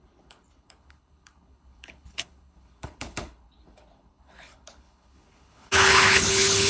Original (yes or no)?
no